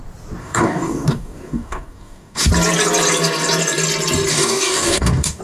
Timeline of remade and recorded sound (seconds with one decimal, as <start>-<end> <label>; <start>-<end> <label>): 0.0-0.4 recorded; 0.4-2.5 remade; 2.5-4.3 recorded; 4.3-5.4 remade